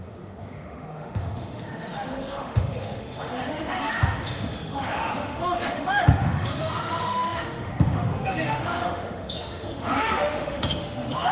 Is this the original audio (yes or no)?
no